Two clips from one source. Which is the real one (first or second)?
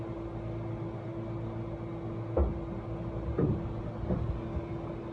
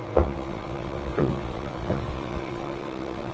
first